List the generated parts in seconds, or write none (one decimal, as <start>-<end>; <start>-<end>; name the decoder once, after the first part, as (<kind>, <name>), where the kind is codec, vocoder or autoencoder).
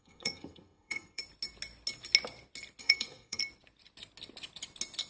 0.0-1.2 (codec, SNAC); 2.8-3.4